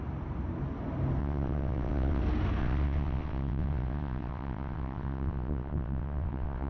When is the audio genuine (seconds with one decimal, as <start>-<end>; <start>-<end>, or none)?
0.0-1.2; 2.2-2.6